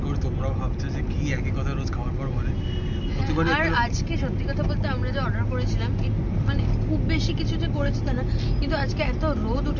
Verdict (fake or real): real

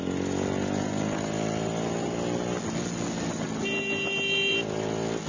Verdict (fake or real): real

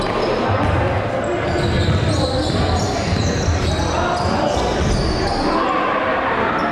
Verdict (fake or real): real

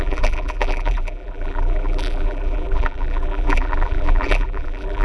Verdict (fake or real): fake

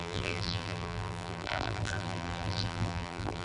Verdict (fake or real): fake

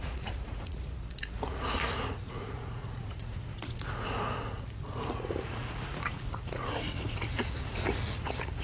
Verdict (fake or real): fake